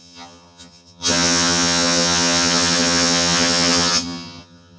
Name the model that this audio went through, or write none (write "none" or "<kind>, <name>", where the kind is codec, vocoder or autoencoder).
vocoder, HiFi-GAN